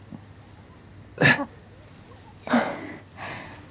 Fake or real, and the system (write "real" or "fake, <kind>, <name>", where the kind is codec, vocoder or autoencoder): real